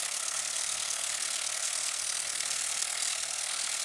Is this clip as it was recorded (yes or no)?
no